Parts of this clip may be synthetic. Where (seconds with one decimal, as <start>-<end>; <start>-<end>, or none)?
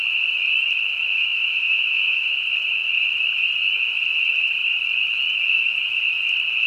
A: 1.1-2.3